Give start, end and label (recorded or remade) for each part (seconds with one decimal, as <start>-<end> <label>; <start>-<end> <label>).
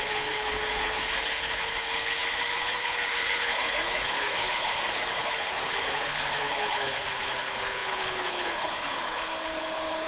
0.0-10.1 remade